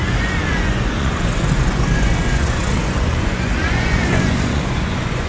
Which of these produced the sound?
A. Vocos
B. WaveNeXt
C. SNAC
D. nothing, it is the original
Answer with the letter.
A